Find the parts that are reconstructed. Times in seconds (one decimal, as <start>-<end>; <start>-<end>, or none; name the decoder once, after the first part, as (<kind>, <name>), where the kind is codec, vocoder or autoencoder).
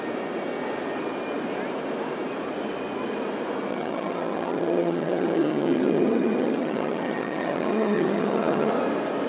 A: 3.7-8.7 (vocoder, HiFi-GAN)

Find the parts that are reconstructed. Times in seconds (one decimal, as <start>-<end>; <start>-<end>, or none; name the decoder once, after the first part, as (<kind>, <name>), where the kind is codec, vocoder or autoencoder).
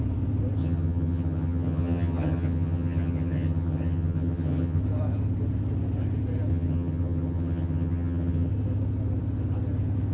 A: 0.6-4.8 (vocoder, HiFi-GAN); 6.5-8.5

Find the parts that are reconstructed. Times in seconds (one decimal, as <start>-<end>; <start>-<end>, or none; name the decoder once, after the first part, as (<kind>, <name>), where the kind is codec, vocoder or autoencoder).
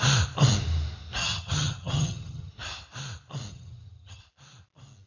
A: 1.2-2.5 (vocoder, HiFi-GAN); 3.5-4.2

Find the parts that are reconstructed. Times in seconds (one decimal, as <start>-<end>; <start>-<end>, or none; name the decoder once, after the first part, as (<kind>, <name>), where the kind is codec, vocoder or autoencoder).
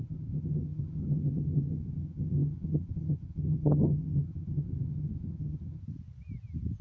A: 0.0-5.8 (vocoder, HiFi-GAN)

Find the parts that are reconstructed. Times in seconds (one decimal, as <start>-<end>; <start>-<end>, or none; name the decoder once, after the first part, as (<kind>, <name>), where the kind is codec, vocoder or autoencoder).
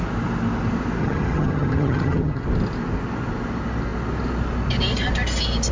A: 1.0-2.4 (vocoder, HiFi-GAN)